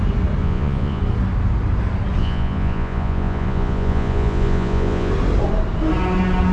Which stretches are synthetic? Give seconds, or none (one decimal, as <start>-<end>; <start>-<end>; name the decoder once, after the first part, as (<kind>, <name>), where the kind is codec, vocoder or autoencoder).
0.4-1.0 (vocoder, Vocos); 2.2-5.1

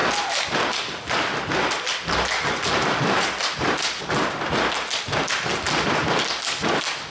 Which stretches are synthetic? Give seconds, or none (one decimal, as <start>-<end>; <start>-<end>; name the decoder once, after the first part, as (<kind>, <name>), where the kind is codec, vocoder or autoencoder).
0.0-4.0 (vocoder, BigVGAN v2); 5.5-6.2

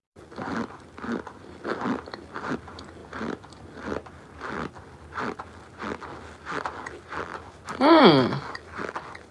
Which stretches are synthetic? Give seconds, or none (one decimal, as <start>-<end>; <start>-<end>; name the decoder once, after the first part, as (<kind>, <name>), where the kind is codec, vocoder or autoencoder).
0.0-2.4 (vocoder, BigVGAN v2); 3.0-3.8

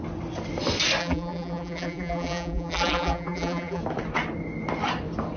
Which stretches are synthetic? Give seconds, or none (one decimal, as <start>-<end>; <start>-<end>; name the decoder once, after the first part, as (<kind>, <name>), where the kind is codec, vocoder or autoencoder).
1.0-3.8 (vocoder, BigVGAN v2)

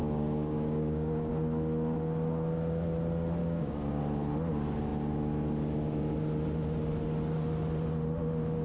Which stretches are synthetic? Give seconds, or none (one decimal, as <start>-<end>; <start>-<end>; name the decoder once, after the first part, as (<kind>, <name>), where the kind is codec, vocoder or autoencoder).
0.0-1.3 (codec, DAC); 3.4-4.0

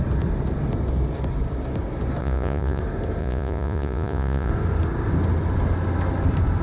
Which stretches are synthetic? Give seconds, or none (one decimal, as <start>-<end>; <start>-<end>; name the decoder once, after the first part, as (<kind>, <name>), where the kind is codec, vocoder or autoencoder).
2.2-2.8 (vocoder, Vocos); 3.2-4.5

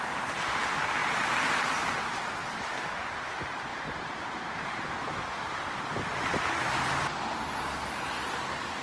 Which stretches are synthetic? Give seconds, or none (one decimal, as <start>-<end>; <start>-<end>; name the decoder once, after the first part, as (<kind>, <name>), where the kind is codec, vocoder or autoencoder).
none